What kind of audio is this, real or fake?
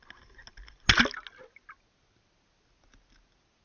real